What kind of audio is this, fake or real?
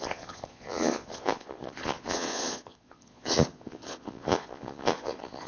fake